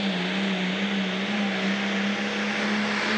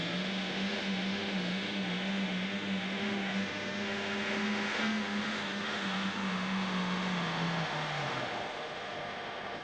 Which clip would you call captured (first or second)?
first